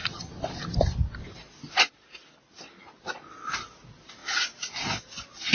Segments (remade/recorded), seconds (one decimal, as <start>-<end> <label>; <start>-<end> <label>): 0.0-5.5 recorded